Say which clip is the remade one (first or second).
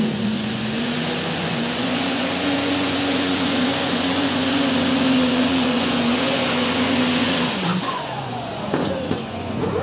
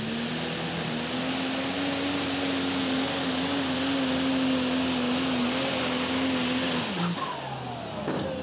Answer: first